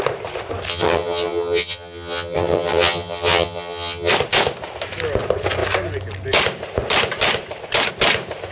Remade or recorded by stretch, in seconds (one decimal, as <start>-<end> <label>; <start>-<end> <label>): 0.0-0.7 recorded; 0.7-4.1 remade; 4.1-8.5 recorded